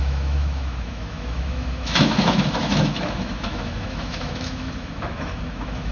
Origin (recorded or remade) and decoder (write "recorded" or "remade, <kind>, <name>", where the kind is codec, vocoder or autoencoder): remade, autoencoder, DAC-VAE